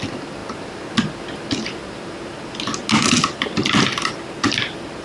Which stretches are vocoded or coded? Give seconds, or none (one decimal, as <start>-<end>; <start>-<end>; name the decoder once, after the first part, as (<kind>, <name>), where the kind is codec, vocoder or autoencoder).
0.0-0.4 (vocoder, BigVGAN v2); 1.0-1.8; 3.4-5.0